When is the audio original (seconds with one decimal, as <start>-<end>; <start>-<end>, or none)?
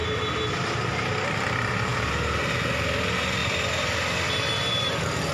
0.0-5.3